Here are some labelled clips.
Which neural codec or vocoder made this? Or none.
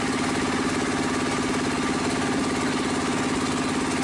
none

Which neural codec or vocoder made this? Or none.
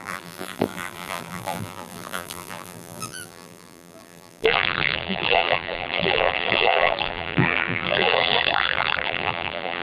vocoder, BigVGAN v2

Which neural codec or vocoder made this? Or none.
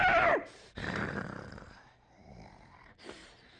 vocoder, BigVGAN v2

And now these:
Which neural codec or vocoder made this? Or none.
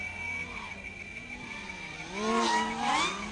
none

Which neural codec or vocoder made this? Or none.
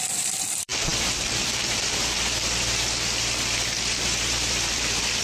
vocoder, BigVGAN v2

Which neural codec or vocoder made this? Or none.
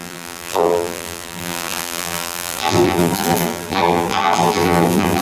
vocoder, BigVGAN v2